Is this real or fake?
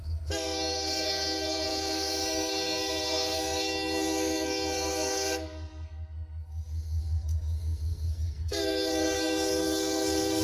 fake